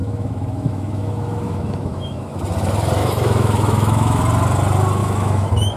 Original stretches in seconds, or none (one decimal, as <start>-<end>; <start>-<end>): 2.4-3.0; 4.2-5.0